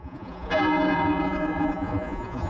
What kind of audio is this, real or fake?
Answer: fake